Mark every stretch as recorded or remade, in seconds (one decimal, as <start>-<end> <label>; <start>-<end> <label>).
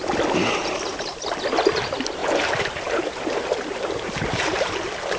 0.0-0.6 recorded; 0.6-1.3 remade; 1.3-2.2 recorded; 2.2-4.8 remade; 4.8-5.2 recorded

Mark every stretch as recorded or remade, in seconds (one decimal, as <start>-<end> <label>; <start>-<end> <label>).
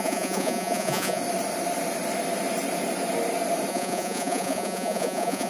0.0-1.2 remade; 1.2-3.7 recorded; 3.7-5.5 remade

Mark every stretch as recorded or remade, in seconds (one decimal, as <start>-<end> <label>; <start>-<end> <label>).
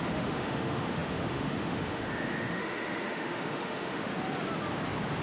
0.0-4.1 remade; 4.1-5.2 recorded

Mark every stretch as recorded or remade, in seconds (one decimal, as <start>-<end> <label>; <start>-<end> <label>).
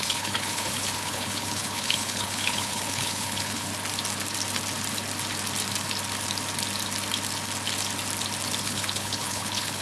0.0-3.7 remade; 3.7-8.6 recorded; 8.6-9.8 remade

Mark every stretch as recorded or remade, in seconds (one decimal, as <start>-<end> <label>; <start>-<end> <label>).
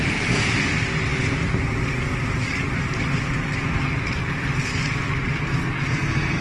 0.0-6.4 recorded